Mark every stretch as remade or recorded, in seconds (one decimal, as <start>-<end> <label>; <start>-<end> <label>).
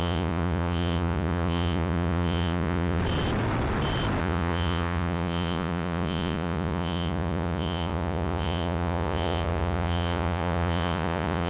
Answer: 0.0-3.0 remade; 3.0-4.2 recorded; 4.2-11.5 remade